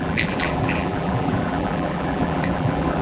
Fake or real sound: fake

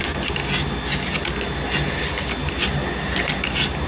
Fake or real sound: real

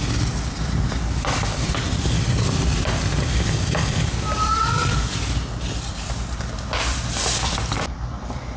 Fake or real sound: fake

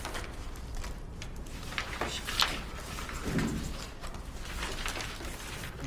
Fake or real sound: real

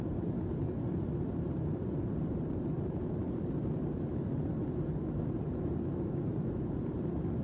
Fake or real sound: fake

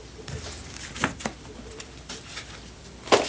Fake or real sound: fake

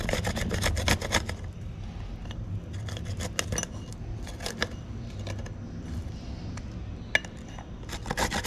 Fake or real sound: real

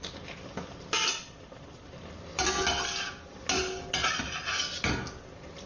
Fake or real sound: real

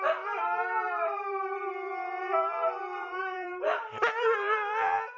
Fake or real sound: fake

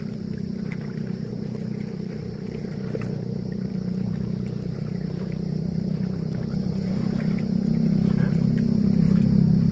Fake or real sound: fake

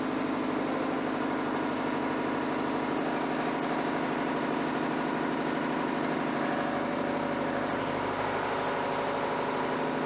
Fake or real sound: fake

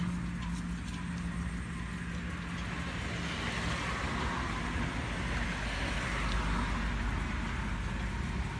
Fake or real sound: real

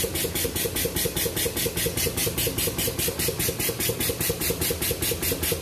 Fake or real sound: real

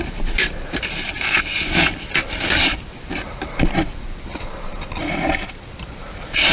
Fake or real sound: fake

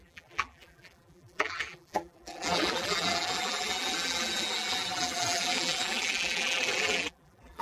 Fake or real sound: fake